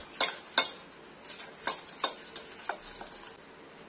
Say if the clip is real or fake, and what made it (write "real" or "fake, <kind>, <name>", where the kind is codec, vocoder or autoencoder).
real